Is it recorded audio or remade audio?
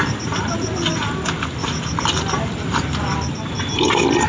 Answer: recorded